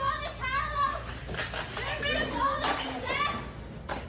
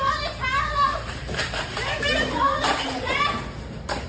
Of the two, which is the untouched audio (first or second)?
first